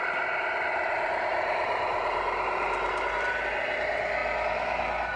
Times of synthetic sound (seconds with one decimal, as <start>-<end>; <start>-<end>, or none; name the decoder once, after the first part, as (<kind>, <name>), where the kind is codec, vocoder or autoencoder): none